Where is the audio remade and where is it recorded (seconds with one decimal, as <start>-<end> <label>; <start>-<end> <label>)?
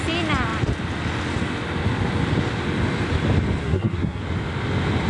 0.0-3.6 recorded; 3.6-4.2 remade; 4.2-5.1 recorded